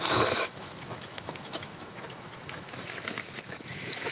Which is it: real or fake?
fake